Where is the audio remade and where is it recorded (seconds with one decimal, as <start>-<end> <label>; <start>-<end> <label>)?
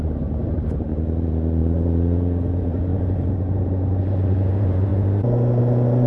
0.0-0.9 remade; 0.9-1.6 recorded; 1.6-4.9 remade; 4.9-5.6 recorded; 5.6-6.1 remade